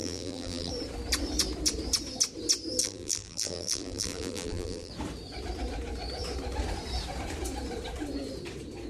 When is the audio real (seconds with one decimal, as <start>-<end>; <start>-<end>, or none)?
0.7-2.8; 4.9-8.9